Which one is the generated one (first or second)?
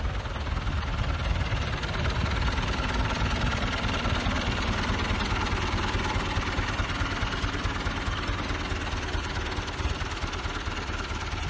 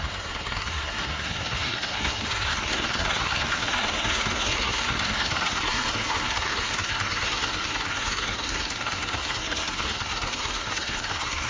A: second